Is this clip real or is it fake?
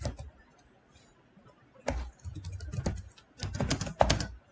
real